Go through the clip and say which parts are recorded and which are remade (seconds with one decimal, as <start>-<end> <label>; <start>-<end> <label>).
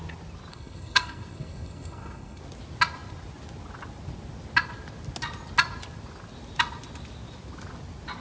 0.0-0.5 recorded; 0.5-2.4 remade; 2.4-8.2 recorded